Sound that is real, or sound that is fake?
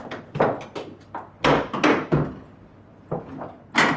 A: real